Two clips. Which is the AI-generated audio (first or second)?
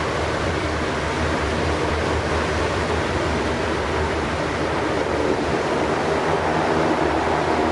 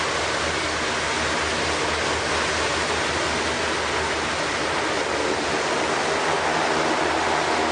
first